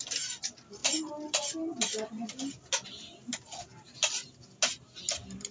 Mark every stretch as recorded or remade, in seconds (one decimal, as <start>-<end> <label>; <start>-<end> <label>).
0.0-5.5 recorded